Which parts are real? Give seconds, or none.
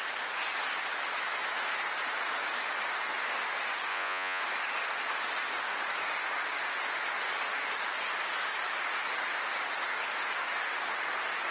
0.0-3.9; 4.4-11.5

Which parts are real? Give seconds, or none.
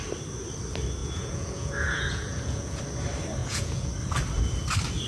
0.0-1.0; 2.8-3.4; 3.9-5.1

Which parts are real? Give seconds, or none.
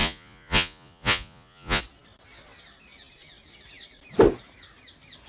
1.8-5.3